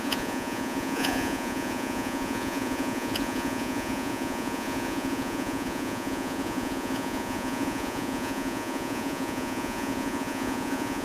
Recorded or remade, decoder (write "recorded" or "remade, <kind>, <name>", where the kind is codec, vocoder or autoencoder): remade, vocoder, Vocos